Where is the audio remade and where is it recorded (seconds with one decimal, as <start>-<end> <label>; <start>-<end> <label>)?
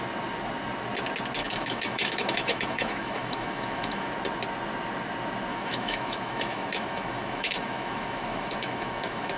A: 0.0-1.4 recorded; 1.4-4.1 remade; 4.1-5.5 recorded; 5.5-9.4 remade